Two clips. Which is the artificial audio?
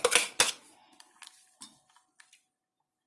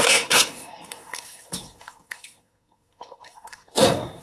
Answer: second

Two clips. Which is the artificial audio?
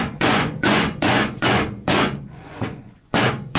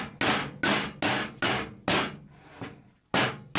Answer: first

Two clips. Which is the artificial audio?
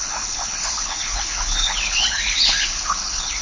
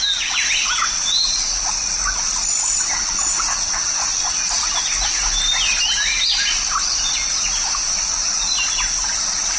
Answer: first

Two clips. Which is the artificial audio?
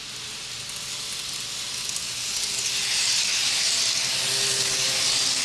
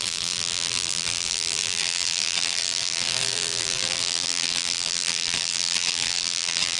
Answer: second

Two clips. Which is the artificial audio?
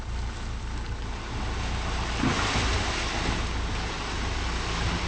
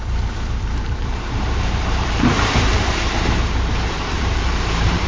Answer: second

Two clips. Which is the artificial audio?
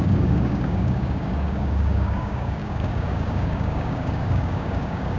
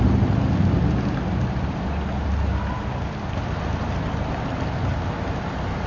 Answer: first